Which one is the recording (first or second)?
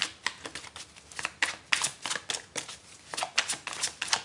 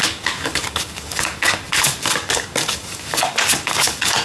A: first